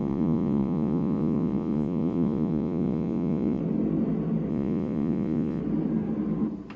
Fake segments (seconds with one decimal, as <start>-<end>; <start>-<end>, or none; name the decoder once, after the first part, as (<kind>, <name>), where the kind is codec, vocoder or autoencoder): 0.0-3.6 (vocoder, Vocos); 4.5-5.6